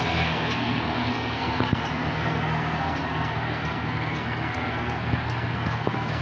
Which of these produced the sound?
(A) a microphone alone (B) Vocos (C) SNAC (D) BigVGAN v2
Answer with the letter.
C